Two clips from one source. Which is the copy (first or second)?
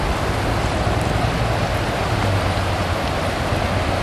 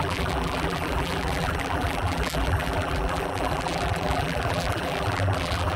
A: second